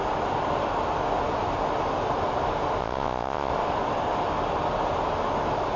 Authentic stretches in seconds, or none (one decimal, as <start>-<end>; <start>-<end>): 0.0-2.8; 3.5-5.8